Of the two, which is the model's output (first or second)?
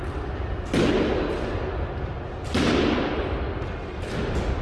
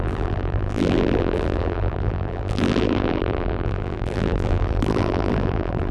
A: second